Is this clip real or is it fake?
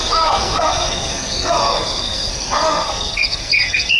fake